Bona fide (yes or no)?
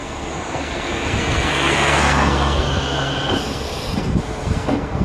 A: no